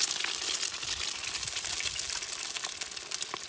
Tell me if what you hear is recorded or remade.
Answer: recorded